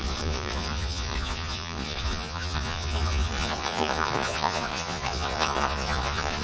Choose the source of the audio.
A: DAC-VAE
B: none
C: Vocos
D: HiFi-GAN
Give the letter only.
C